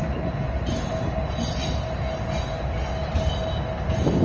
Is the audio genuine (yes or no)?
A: yes